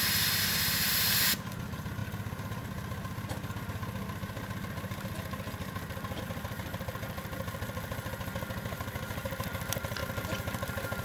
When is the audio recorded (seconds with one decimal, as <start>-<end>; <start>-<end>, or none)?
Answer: 0.0-11.0